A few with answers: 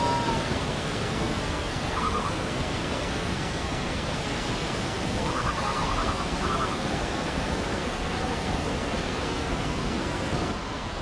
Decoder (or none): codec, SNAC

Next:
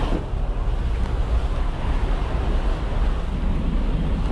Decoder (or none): none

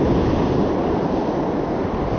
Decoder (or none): none